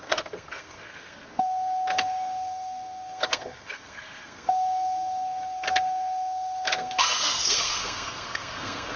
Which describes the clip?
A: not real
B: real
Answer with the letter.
A